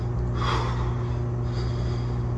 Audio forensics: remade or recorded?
recorded